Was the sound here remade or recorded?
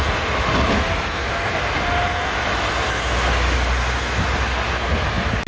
recorded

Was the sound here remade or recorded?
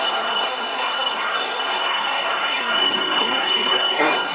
remade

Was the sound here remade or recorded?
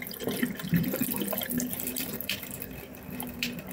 remade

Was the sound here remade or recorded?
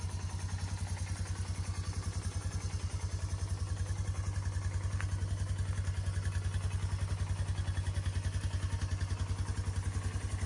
recorded